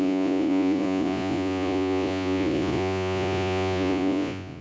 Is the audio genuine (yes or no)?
no